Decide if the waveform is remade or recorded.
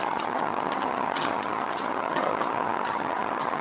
remade